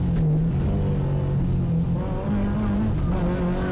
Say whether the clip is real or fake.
real